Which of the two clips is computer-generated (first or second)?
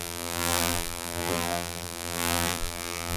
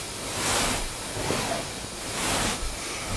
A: first